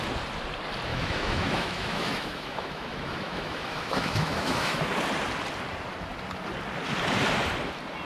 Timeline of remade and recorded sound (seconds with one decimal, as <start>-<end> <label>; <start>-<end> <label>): 0.0-0.9 recorded; 0.9-4.8 remade; 4.8-8.1 recorded